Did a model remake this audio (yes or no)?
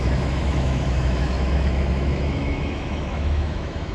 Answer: yes